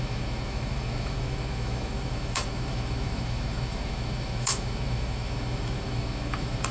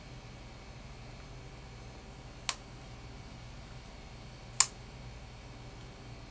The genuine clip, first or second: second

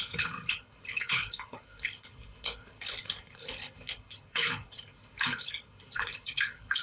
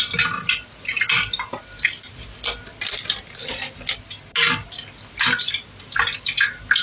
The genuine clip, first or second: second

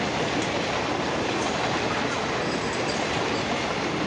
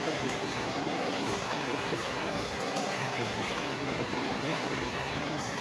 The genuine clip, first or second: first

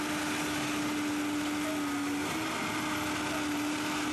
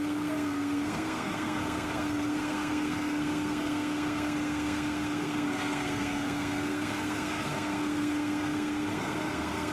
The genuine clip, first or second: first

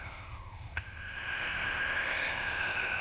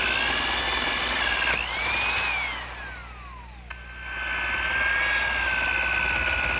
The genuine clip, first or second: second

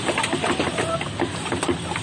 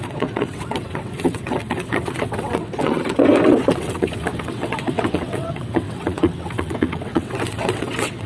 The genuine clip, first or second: first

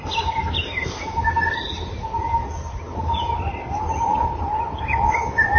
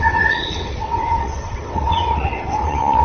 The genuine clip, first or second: first